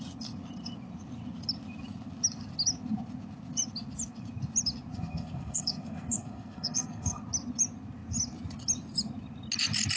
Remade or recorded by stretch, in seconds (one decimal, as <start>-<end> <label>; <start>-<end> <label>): 0.0-4.9 recorded; 4.9-7.2 remade; 7.2-10.0 recorded